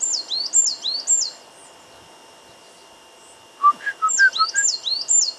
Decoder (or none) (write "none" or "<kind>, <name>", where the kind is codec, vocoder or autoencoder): none